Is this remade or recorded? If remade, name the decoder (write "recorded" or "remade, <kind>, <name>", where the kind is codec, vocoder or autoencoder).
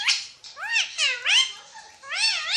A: remade, vocoder, BigVGAN v2